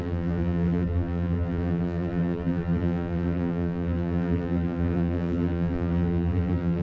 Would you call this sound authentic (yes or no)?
no